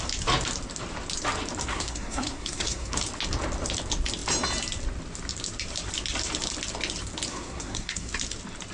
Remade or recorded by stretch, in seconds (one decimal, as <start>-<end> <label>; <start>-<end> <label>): 0.0-1.7 recorded; 1.7-3.0 remade; 3.0-7.3 recorded; 7.3-8.1 remade; 8.1-8.7 recorded